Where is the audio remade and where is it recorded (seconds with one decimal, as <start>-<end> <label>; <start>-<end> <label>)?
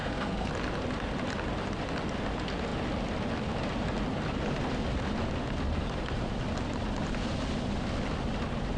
0.0-0.5 remade; 0.5-8.8 recorded